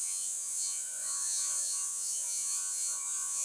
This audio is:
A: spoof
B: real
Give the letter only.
A